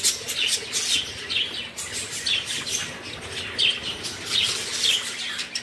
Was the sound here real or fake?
real